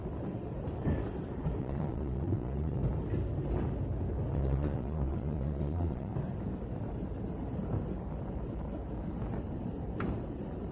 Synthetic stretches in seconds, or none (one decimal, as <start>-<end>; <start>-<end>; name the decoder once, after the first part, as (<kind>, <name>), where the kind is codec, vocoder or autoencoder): 1.6-2.8 (vocoder, Vocos); 4.3-6.1